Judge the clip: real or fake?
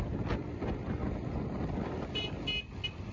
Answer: real